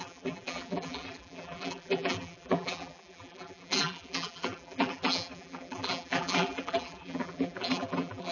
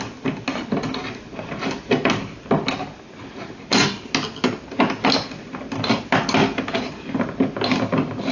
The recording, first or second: second